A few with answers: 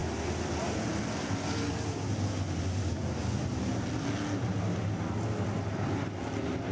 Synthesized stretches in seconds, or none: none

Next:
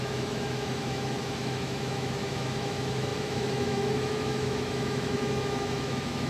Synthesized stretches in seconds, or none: 0.0-6.3 (autoencoder, DAC-VAE)

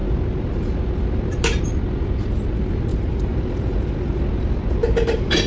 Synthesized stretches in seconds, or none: 2.9-3.4 (vocoder, BigVGAN v2); 4.8-5.5

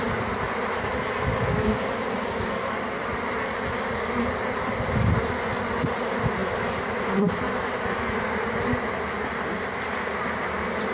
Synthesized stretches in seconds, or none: 6.4-7.5 (vocoder, BigVGAN v2)

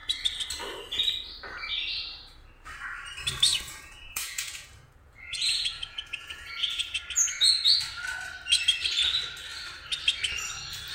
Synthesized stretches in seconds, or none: 3.5-7.0 (vocoder, Vocos)

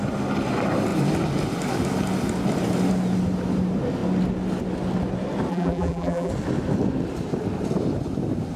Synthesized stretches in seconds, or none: 5.5-6.3 (vocoder, BigVGAN v2)

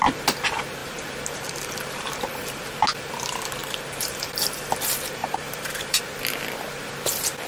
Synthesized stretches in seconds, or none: 0.8-2.7 (vocoder, BigVGAN v2); 3.6-4.8; 5.2-6.0